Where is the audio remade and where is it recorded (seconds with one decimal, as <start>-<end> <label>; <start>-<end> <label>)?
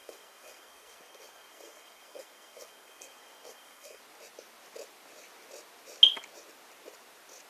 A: 0.0-4.0 remade; 4.0-7.5 recorded